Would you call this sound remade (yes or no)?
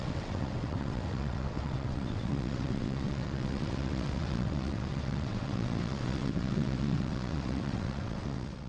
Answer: yes